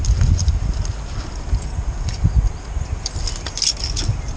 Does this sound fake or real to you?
real